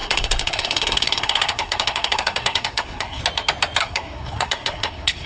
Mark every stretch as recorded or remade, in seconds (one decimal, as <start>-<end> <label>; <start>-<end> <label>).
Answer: 0.0-3.2 remade; 3.2-3.8 recorded; 3.8-5.3 remade